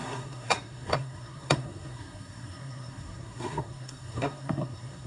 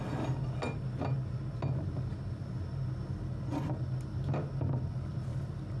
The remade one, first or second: first